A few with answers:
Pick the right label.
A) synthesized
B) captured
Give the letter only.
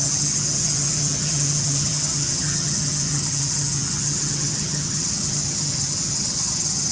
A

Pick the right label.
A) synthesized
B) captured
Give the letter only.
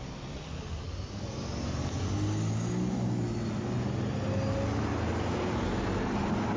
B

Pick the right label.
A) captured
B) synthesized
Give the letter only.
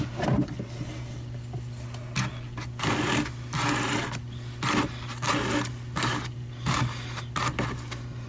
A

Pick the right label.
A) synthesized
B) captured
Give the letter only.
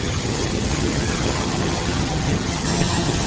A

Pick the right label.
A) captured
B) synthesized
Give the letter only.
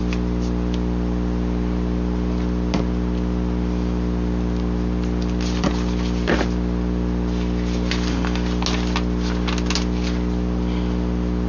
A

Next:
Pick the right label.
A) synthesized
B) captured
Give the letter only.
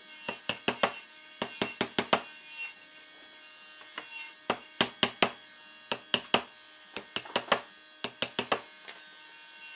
B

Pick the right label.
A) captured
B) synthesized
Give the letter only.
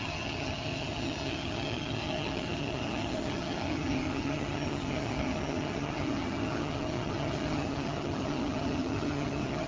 B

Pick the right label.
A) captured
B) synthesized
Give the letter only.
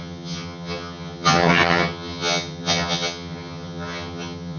B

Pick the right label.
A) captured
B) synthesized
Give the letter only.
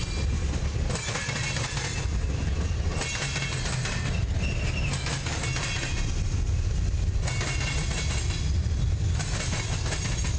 A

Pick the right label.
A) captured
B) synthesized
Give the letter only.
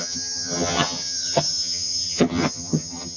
B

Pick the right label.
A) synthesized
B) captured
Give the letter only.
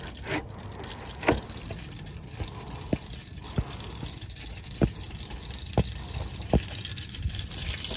B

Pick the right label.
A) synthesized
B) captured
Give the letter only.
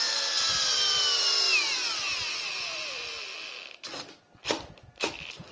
B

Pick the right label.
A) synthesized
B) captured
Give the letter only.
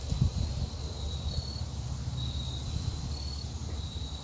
B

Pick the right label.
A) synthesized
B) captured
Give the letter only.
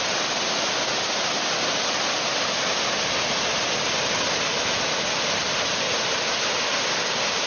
B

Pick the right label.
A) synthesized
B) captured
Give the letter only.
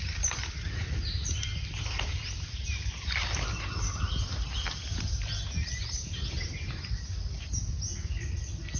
B